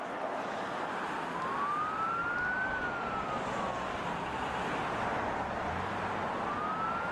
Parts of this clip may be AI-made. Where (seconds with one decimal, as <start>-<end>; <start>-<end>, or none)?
none